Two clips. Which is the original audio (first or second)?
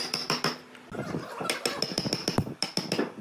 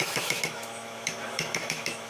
first